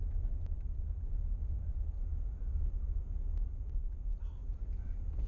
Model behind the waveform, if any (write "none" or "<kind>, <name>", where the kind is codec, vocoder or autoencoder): none